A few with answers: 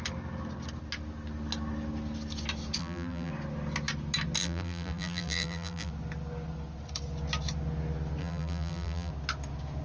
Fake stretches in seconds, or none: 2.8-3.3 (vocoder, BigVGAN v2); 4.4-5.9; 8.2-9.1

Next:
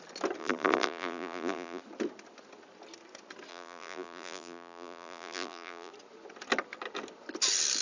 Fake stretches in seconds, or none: 0.4-1.8 (vocoder, BigVGAN v2); 3.5-5.9

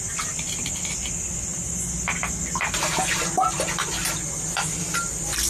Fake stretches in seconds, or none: none

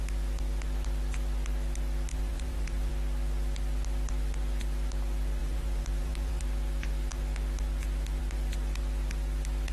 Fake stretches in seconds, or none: 2.1-2.9 (vocoder, BigVGAN v2); 5.4-6.4

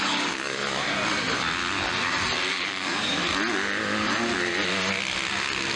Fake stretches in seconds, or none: 0.0-0.6 (codec, DAC); 2.5-3.2

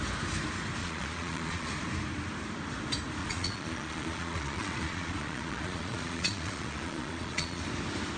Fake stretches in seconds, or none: 0.8-1.7 (vocoder, Vocos); 3.2-7.6

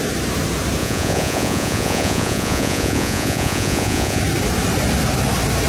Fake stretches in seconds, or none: 0.8-4.2 (vocoder, Vocos)